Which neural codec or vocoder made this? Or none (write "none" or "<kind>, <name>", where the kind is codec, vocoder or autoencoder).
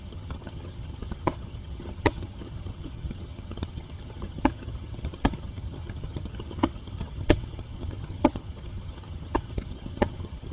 vocoder, HiFi-GAN